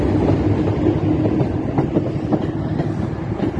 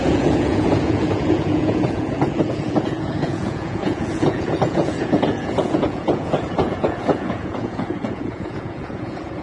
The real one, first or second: first